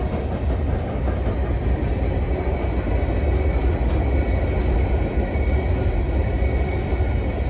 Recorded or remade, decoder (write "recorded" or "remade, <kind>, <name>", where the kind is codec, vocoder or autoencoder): recorded